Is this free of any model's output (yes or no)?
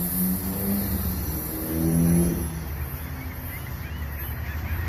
yes